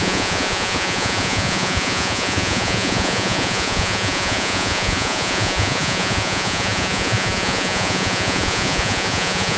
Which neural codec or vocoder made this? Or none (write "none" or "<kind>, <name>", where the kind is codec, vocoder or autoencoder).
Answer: vocoder, Vocos